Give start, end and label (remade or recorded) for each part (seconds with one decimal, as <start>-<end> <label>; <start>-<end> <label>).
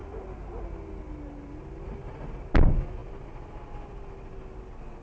0.0-5.0 recorded